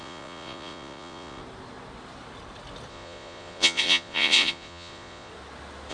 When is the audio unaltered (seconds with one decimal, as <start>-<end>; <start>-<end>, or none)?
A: 1.4-2.9; 5.3-5.9